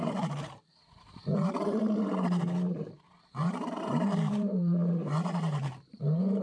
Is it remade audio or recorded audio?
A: remade